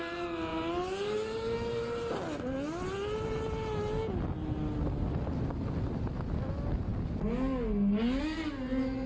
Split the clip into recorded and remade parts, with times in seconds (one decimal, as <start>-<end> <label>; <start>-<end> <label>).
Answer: 0.0-9.1 recorded